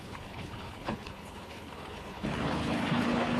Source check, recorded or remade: remade